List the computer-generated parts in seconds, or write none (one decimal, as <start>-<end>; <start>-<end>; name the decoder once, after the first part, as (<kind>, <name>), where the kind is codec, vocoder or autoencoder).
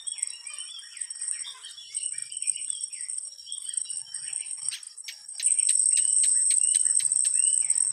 2.2-3.8 (vocoder, BigVGAN v2); 6.4-7.5